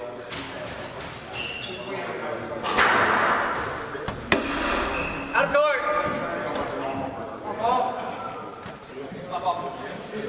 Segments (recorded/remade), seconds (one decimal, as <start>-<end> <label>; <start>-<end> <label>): 0.0-10.3 recorded